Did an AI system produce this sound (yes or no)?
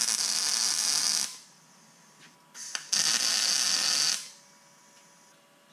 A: no